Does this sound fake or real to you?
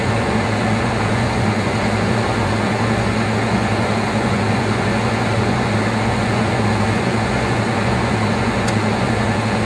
fake